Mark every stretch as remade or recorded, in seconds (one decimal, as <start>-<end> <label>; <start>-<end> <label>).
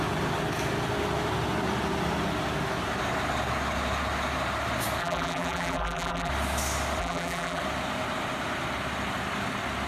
0.0-5.0 recorded; 5.0-6.3 remade; 6.3-7.0 recorded; 7.0-7.6 remade; 7.6-9.9 recorded